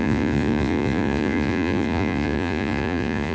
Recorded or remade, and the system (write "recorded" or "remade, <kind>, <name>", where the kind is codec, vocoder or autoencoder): remade, vocoder, Vocos